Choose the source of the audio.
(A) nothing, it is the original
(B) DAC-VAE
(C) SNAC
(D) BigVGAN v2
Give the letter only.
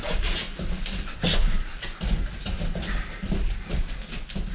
A